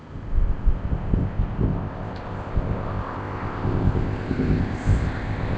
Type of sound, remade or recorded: remade